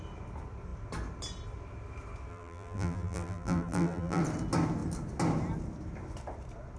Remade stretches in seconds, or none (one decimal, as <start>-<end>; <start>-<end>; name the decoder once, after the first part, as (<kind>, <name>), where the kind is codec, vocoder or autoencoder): 2.3-4.2 (vocoder, BigVGAN v2)